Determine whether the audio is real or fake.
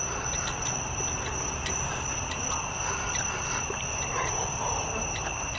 real